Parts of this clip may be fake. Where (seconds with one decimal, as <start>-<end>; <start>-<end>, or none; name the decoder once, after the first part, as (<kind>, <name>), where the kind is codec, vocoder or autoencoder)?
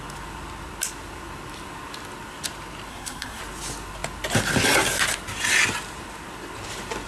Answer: 2.9-3.4 (codec, SNAC)